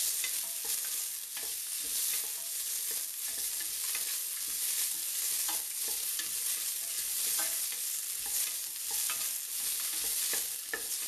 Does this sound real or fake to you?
real